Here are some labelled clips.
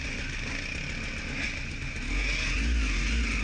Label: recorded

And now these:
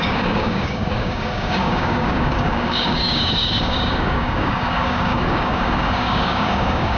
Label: remade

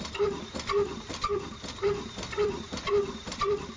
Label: remade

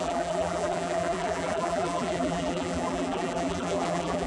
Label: remade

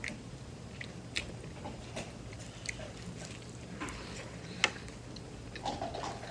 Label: recorded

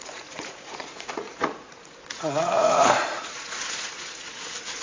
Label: remade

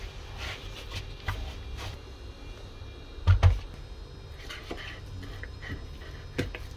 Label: recorded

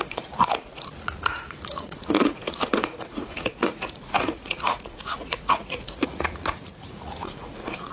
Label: remade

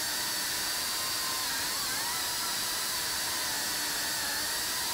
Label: remade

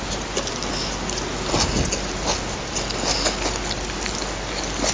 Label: recorded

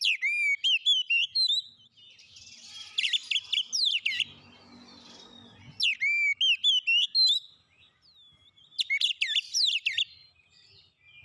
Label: recorded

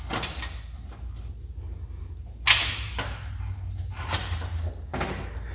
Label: recorded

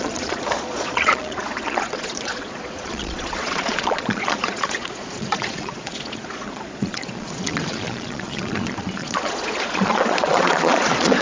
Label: remade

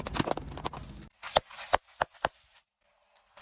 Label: recorded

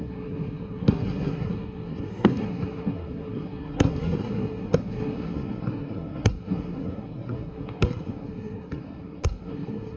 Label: remade